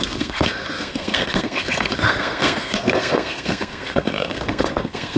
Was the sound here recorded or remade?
remade